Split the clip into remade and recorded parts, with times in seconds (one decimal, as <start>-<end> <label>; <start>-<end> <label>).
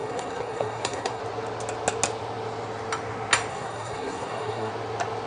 0.0-1.2 remade; 1.2-3.5 recorded; 3.5-4.7 remade; 4.7-5.3 recorded